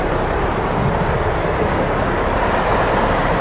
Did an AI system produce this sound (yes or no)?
no